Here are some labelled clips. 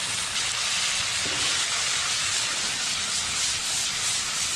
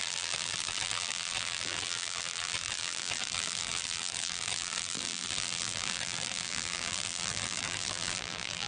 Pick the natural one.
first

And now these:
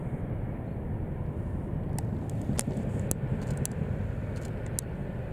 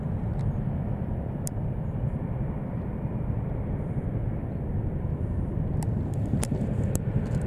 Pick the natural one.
first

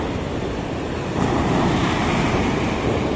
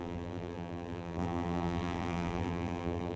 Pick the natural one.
first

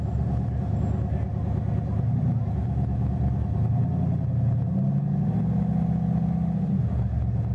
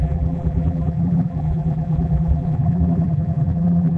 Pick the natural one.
first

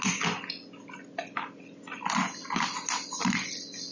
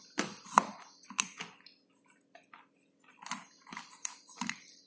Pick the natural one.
first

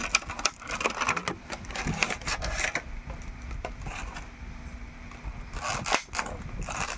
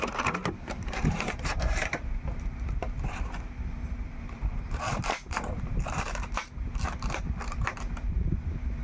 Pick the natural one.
first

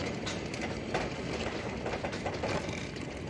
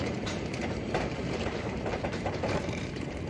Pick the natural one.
first